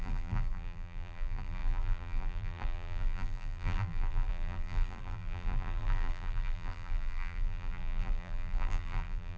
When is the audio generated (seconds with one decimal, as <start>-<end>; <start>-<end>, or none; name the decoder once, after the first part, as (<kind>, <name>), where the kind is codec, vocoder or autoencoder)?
0.0-9.4 (vocoder, BigVGAN v2)